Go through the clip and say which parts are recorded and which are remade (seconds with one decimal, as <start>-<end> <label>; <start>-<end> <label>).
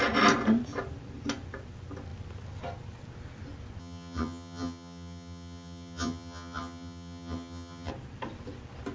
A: 0.0-3.8 recorded; 3.8-7.9 remade; 7.9-8.9 recorded